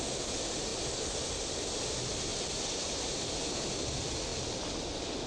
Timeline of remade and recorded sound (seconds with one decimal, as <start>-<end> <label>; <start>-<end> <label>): 0.0-2.3 recorded; 2.3-3.3 remade; 3.3-5.3 recorded